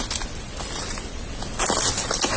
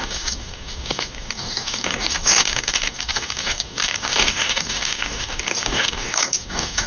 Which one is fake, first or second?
second